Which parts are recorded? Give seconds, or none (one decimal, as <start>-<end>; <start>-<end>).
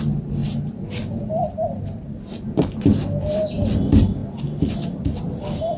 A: 0.0-5.8